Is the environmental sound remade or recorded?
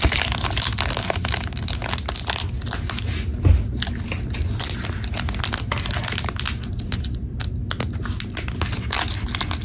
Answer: recorded